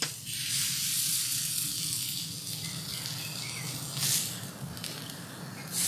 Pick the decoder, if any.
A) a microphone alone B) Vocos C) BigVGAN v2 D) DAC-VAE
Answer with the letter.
A